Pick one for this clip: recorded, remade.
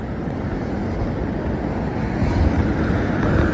recorded